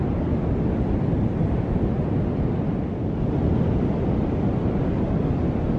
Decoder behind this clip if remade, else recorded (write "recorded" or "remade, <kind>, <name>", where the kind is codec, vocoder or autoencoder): recorded